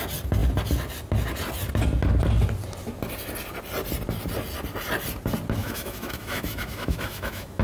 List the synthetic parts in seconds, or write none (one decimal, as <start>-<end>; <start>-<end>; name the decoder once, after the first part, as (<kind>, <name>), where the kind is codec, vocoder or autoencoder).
5.6-7.6 (autoencoder, DAC-VAE)